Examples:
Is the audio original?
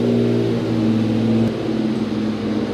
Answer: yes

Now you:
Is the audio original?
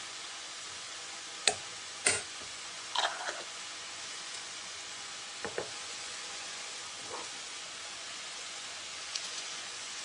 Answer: no